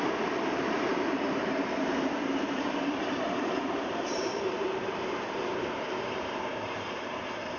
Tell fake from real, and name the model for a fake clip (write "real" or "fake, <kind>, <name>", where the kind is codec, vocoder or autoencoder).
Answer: fake, vocoder, BigVGAN v2